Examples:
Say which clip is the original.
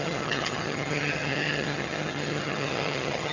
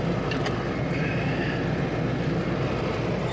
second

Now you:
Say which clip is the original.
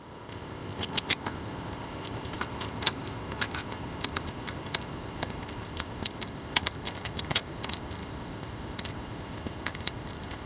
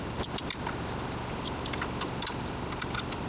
second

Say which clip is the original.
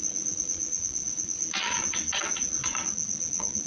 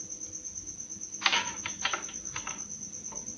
second